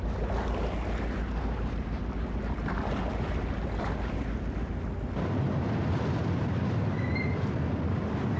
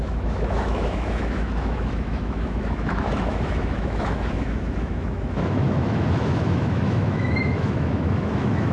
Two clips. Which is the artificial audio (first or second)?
second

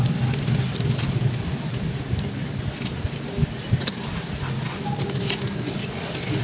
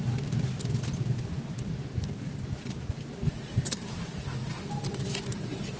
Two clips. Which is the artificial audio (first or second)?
second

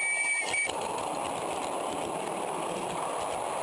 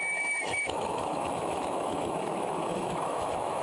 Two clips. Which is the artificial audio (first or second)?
second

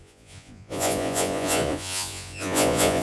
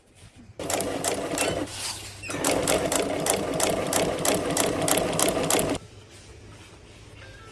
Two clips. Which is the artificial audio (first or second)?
first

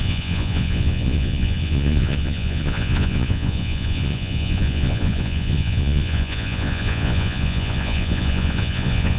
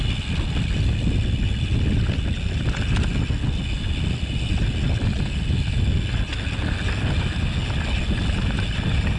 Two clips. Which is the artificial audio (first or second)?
first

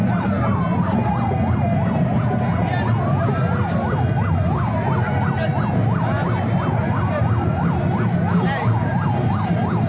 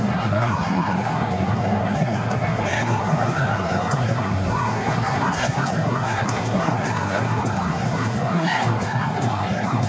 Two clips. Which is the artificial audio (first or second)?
second